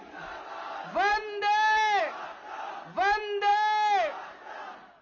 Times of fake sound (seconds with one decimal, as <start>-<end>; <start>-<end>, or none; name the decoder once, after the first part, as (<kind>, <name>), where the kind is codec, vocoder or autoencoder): none